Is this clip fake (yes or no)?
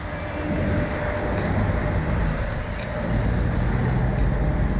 no